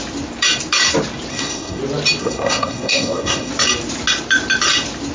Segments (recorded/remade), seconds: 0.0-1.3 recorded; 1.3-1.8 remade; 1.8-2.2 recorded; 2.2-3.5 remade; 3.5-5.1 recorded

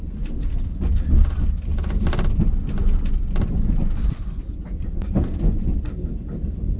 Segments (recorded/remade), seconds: 0.0-6.8 recorded